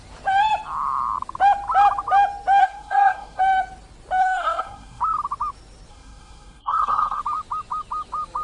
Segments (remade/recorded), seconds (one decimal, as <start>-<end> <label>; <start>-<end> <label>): 0.0-2.6 recorded; 2.6-3.4 remade; 3.4-4.2 recorded; 4.2-5.0 remade; 5.0-5.9 recorded; 5.9-7.2 remade; 7.2-8.4 recorded